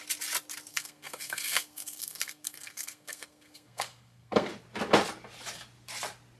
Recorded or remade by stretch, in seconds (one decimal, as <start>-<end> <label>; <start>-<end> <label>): 0.0-0.7 recorded; 0.7-4.5 remade; 4.5-6.4 recorded

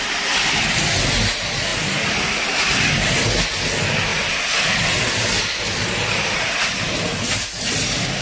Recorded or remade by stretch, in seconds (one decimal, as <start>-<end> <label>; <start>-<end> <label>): 0.0-8.2 recorded

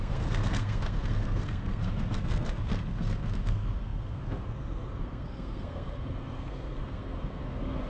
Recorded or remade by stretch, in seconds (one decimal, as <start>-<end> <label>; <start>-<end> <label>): 0.0-7.9 remade

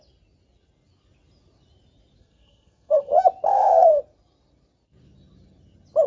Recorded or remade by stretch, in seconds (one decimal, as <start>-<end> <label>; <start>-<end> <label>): 0.0-2.2 recorded; 2.2-3.1 remade; 3.1-3.5 recorded; 3.5-4.0 remade; 4.0-6.1 recorded

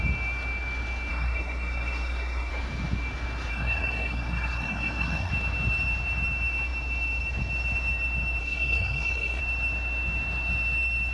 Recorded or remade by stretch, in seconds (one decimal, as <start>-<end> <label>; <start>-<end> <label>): 0.0-1.1 recorded; 1.1-2.5 remade; 2.5-3.5 recorded; 3.5-5.3 remade; 5.3-8.4 recorded; 8.4-9.4 remade; 9.4-11.1 recorded

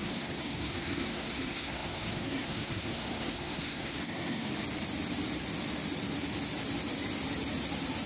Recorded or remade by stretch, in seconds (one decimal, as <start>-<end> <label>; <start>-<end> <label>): 0.0-4.5 remade; 4.5-8.1 recorded

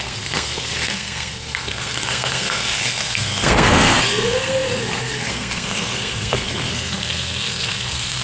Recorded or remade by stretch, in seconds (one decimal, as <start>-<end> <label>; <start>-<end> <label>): 0.0-8.2 remade